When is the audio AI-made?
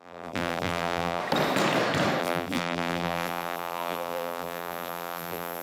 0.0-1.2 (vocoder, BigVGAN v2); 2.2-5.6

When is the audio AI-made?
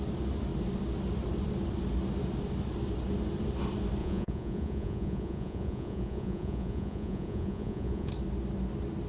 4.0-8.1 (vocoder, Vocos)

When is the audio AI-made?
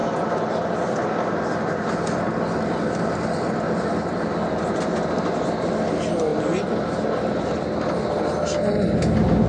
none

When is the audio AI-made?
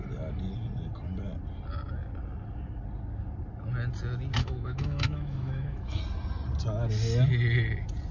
4.4-6.0 (autoencoder, DAC-VAE)